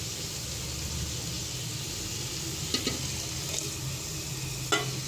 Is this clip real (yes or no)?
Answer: yes